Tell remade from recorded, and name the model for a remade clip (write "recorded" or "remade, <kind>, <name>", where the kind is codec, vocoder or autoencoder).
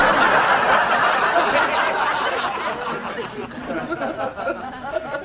recorded